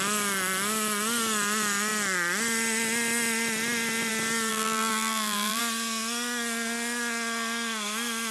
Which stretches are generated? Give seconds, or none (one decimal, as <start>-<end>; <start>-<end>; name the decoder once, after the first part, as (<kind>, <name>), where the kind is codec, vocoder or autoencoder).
4.5-5.6 (vocoder, BigVGAN v2)